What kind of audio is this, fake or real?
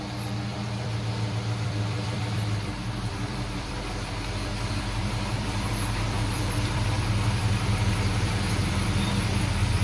fake